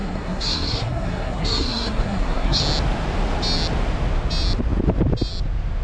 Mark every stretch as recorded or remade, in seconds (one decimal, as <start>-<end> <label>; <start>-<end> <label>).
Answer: 0.0-2.6 remade; 2.6-5.8 recorded